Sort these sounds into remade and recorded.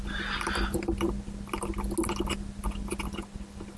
recorded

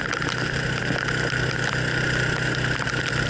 recorded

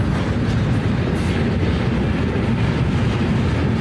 recorded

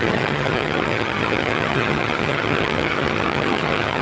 remade